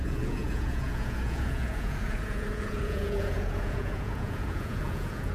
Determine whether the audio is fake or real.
fake